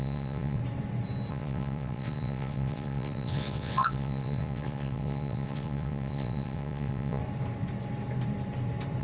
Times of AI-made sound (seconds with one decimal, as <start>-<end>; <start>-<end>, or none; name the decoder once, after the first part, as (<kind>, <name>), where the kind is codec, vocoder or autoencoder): 0.0-0.6 (vocoder, WaveNeXt); 1.3-7.2